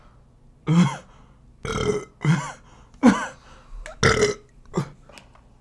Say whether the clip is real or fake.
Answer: real